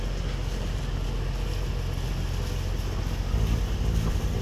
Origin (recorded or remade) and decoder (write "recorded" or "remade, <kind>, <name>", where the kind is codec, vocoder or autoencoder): recorded